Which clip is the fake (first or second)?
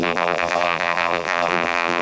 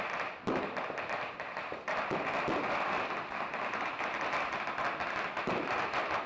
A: first